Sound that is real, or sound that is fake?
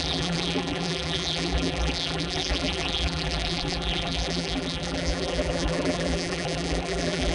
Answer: fake